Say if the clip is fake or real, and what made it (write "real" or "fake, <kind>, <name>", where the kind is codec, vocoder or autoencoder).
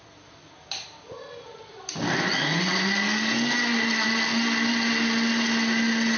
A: real